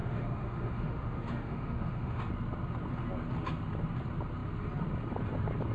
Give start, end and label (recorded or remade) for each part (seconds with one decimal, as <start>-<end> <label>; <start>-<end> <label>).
0.0-2.2 remade; 2.2-5.7 recorded